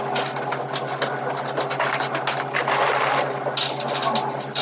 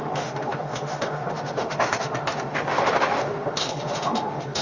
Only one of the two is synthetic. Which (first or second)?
second